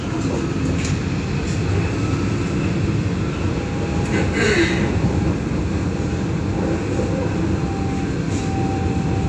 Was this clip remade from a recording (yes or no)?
no